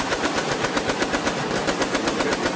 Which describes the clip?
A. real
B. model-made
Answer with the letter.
A